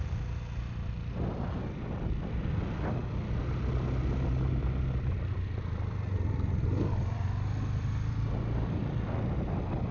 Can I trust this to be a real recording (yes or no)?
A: yes